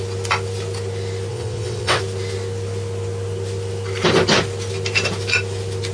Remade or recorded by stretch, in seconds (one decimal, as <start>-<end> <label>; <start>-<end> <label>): 0.0-1.3 recorded; 1.3-2.0 remade; 2.0-5.9 recorded